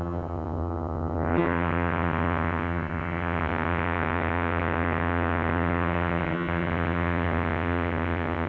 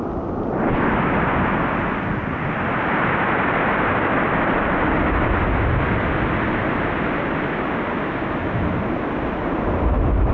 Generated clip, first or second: first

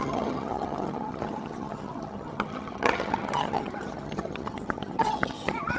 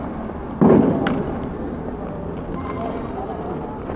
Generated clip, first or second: first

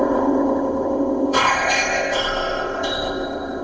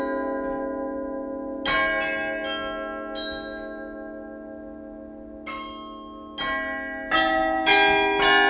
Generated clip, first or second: first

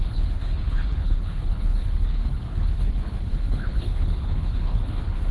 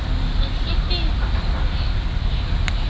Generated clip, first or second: first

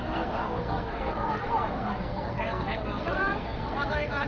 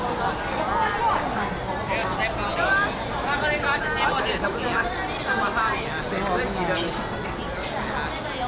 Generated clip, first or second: first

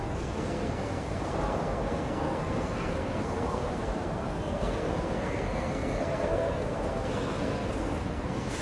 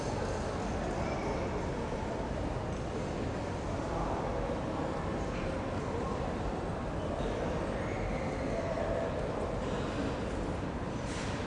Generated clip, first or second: first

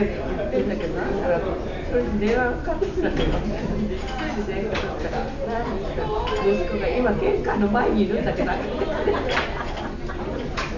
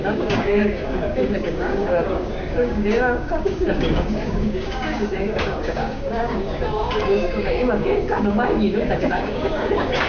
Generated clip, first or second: second